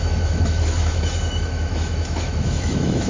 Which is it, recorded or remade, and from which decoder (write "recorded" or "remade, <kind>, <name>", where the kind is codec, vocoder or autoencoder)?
remade, autoencoder, DAC-VAE